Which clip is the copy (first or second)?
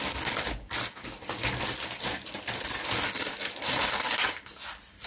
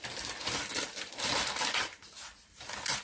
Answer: second